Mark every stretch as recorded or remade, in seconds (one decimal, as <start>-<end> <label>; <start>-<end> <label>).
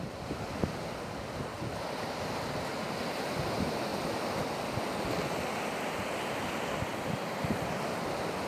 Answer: 0.0-8.5 recorded